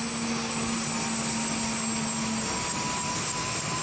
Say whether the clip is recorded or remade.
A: recorded